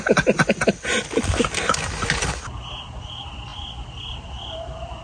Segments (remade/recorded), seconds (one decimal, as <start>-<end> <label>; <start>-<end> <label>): 0.0-5.0 recorded